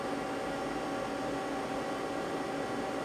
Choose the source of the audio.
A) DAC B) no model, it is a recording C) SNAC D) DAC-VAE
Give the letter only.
B